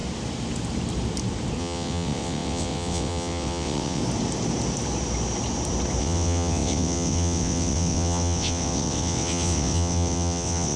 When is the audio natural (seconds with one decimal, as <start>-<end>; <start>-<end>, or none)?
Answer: 0.0-1.6; 4.0-6.0